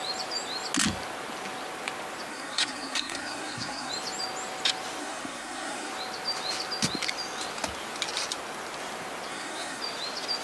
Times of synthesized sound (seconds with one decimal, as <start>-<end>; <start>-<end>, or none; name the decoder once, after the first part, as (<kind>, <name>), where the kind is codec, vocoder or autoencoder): 2.3-3.9 (codec, SNAC); 5.0-5.9; 9.3-9.8